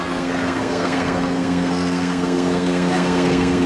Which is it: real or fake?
fake